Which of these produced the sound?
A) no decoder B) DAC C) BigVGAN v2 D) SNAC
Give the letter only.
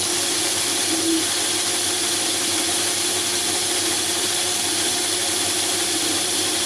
C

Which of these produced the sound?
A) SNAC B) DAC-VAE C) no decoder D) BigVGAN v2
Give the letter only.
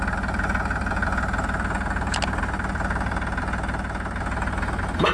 C